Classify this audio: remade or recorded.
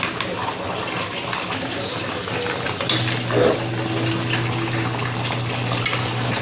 recorded